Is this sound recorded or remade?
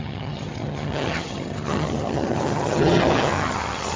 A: remade